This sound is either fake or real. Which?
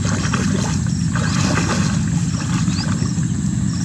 real